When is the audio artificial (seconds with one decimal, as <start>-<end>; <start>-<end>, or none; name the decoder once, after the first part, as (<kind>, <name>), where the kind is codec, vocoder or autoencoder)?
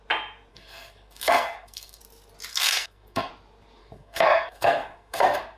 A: 0.5-2.0 (codec, SNAC); 2.5-3.3; 3.8-5.6